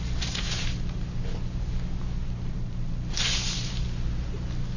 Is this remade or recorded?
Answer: recorded